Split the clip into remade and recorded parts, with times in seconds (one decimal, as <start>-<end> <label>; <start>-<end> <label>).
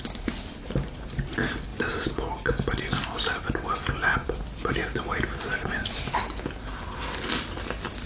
0.0-8.1 recorded